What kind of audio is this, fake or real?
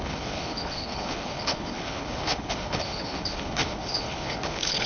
fake